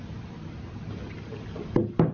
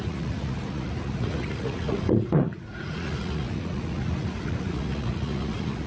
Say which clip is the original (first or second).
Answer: first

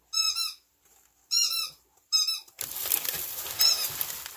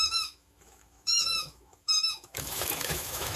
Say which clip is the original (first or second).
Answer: first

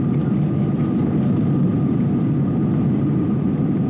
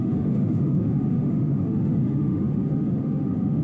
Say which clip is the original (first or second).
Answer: first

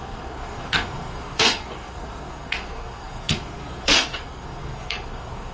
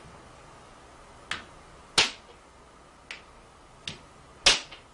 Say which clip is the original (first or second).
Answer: second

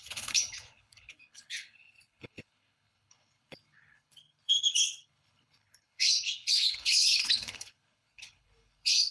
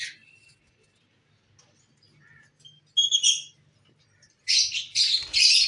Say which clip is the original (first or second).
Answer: second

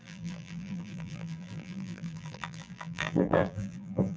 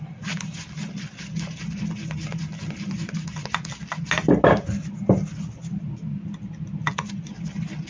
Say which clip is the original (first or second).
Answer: second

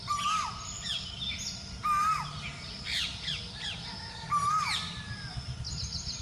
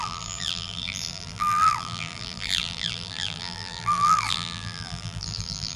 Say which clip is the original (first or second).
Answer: first